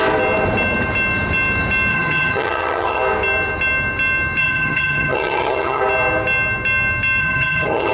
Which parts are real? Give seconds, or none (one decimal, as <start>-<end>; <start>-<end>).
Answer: 0.0-1.9; 3.0-4.4; 5.8-7.2